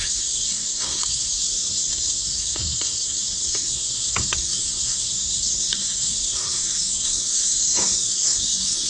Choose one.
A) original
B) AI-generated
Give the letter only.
B